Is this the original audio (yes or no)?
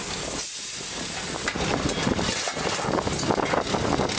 yes